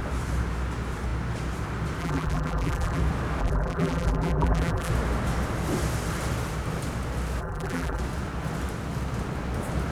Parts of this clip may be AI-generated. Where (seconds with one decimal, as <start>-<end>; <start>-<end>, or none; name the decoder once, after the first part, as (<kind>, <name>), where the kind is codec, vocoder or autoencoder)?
2.0-3.0 (vocoder, BigVGAN v2); 3.4-4.9; 7.4-8.0